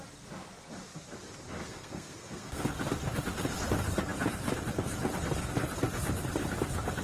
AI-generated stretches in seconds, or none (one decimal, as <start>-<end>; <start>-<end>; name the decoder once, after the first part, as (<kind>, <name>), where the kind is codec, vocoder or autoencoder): 1.6-2.6 (codec, SNAC)